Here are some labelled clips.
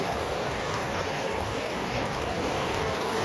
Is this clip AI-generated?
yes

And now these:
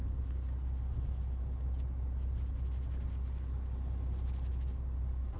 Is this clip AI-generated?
no